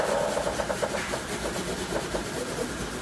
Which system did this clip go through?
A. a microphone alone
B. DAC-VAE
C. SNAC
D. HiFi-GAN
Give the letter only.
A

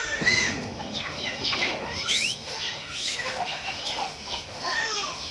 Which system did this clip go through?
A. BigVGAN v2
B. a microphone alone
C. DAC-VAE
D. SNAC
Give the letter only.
C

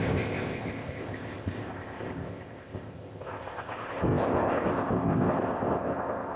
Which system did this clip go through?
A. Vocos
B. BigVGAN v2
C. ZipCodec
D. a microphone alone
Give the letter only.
C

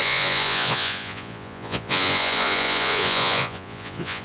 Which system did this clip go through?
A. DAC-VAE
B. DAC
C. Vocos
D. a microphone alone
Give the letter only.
C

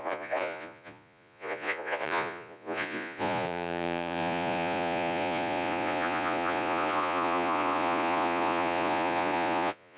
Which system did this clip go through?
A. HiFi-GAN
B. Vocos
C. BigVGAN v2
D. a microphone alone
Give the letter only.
B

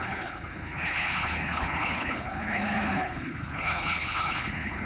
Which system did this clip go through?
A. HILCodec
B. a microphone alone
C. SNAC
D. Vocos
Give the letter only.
A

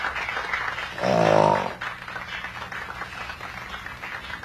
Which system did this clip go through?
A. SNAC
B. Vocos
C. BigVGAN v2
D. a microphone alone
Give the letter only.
D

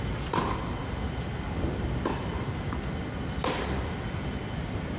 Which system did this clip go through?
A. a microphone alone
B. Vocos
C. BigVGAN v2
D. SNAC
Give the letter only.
A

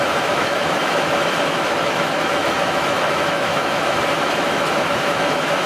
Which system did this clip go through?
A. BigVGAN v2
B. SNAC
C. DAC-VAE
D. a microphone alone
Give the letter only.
C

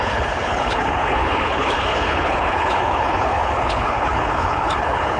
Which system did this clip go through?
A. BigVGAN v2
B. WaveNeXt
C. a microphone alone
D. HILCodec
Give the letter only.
D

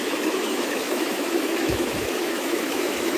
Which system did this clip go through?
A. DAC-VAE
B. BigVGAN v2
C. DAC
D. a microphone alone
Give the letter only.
A